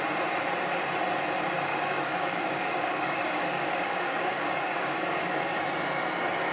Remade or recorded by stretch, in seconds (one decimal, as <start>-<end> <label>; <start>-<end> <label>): 0.0-1.7 recorded; 1.7-5.6 remade; 5.6-6.5 recorded